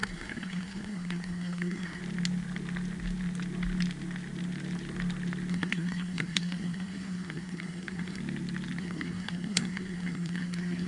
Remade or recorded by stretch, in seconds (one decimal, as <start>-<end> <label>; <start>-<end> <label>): 0.0-2.0 remade; 2.0-5.5 recorded; 5.5-8.2 remade; 8.2-8.8 recorded; 8.8-10.9 remade